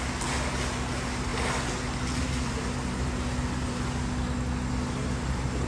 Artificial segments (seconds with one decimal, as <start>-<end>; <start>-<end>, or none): none